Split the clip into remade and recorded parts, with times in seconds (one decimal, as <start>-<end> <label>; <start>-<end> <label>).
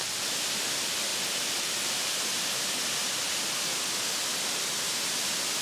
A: 0.0-5.6 recorded